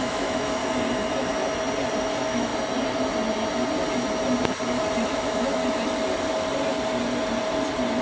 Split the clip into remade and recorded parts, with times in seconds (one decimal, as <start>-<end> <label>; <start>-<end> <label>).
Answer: 0.0-0.6 remade; 0.6-2.0 recorded; 2.0-2.5 remade; 2.5-5.1 recorded; 5.1-5.6 remade; 5.6-8.0 recorded

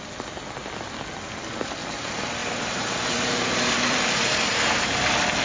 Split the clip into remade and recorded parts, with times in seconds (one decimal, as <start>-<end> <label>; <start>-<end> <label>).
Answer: 0.0-2.4 recorded; 2.4-4.9 remade; 4.9-5.4 recorded